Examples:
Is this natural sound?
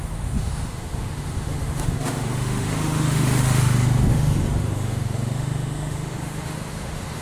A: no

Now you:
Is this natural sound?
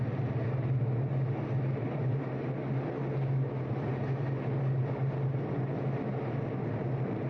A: yes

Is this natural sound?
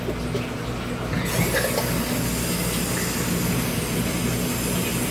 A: yes